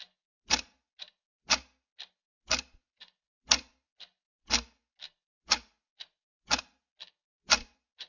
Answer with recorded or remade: recorded